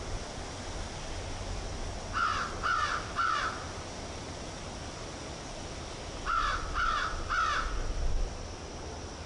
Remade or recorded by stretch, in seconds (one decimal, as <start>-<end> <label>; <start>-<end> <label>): 0.0-2.8 recorded; 2.8-6.0 remade; 6.0-9.3 recorded